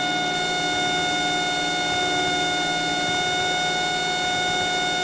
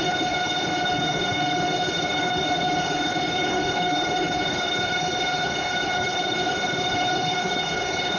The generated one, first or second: second